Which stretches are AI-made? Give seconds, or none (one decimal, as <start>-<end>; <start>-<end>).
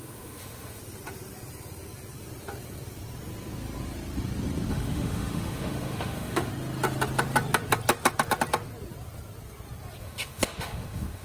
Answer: 0.0-0.8; 4.7-6.5; 10.0-11.2